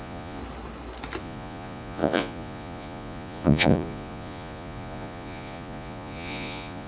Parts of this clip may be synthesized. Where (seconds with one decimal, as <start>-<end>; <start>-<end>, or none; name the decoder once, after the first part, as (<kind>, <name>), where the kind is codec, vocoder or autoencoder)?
0.0-0.4 (vocoder, Vocos); 1.2-6.9